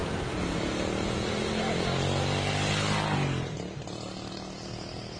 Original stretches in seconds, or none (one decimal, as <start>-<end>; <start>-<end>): 0.0-5.2